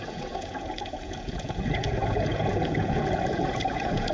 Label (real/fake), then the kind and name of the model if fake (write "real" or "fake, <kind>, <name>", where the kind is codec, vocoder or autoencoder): fake, vocoder, Vocos